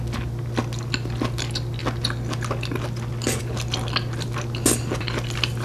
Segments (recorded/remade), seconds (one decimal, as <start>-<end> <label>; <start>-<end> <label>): 0.0-5.6 recorded